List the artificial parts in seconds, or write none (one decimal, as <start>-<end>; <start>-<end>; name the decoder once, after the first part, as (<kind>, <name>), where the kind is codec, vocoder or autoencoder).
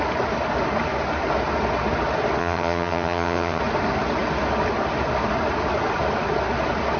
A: 2.4-3.6 (vocoder, HiFi-GAN)